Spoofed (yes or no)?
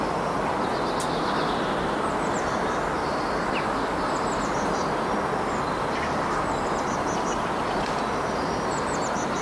no